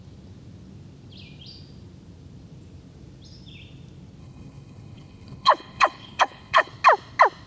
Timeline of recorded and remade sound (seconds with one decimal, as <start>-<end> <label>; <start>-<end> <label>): 0.0-4.2 recorded; 4.2-6.7 remade; 6.7-7.5 recorded